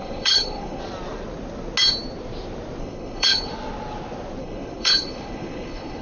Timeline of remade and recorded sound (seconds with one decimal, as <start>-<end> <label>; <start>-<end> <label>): 0.0-0.8 remade; 0.8-2.8 recorded; 2.8-3.5 remade; 3.5-4.4 recorded; 4.4-6.0 remade